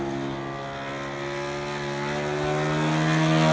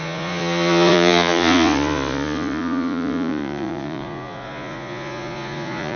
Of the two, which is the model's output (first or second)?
second